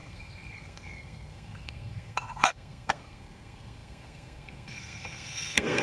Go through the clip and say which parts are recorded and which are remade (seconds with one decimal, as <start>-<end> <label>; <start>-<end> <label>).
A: 0.0-5.8 remade